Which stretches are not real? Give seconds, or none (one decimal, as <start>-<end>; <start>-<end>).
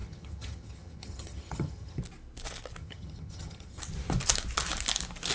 0.0-2.0; 2.8-3.8